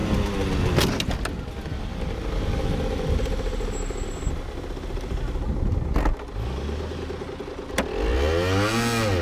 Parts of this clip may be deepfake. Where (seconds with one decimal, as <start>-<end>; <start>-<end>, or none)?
none